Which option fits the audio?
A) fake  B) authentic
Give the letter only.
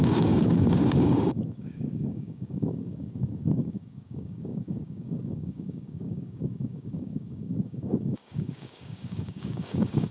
A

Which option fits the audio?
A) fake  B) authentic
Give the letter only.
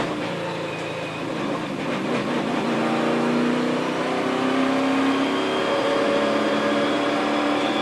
B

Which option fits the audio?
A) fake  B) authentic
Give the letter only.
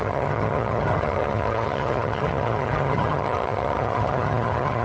A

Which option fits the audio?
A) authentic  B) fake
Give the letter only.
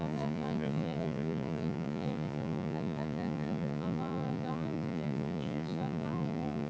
B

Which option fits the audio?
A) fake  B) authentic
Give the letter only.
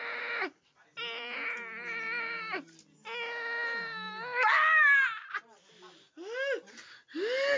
B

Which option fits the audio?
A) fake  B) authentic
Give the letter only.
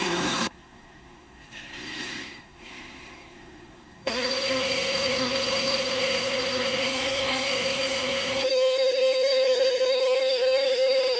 A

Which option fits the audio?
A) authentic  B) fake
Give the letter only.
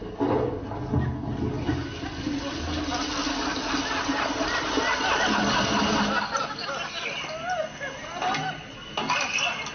A